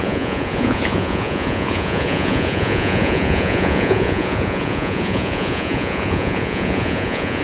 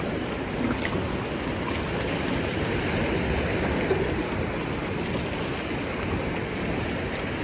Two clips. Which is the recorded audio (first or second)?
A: second